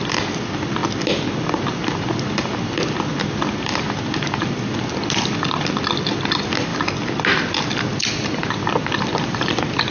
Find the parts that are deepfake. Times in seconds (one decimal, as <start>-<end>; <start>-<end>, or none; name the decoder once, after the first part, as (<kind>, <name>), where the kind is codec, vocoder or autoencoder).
none